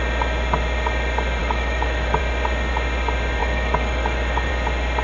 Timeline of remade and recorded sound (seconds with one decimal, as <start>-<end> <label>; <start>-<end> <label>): 0.0-1.4 recorded; 1.4-2.2 remade; 2.2-3.4 recorded; 3.4-4.5 remade; 4.5-5.0 recorded